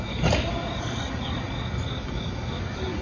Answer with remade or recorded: recorded